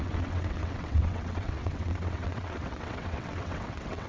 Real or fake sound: fake